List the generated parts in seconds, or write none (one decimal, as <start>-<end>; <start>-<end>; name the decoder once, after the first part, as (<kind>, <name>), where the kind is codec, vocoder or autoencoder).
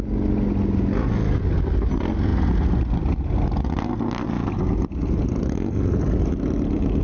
none